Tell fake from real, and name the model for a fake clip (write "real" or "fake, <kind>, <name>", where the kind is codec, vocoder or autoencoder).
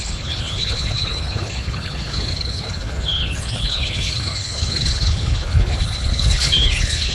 fake, codec, HILCodec